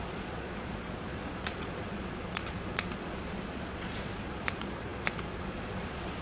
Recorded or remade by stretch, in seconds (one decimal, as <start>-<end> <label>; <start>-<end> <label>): 0.0-6.2 remade